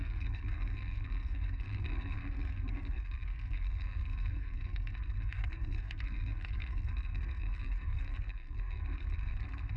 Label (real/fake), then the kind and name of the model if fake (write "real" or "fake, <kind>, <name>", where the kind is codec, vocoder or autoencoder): fake, codec, SNAC